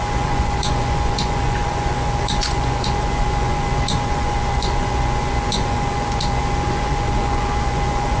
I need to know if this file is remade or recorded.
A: remade